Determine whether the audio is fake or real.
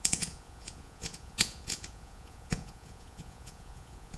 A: fake